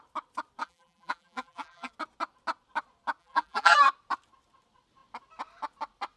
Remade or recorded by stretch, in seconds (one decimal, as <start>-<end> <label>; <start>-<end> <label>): 0.0-0.6 recorded; 0.6-1.9 remade; 1.9-3.2 recorded; 3.2-3.8 remade; 3.8-6.2 recorded